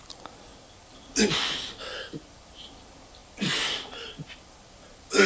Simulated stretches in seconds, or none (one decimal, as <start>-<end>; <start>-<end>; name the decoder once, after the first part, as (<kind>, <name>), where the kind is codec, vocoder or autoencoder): 0.0-0.5 (vocoder, BigVGAN v2); 1.6-5.3